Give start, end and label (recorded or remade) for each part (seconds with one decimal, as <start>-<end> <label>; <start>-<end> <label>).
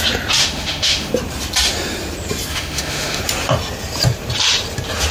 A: 0.0-0.4 recorded; 0.4-1.1 remade; 1.1-2.5 recorded; 2.5-3.2 remade; 3.2-5.1 recorded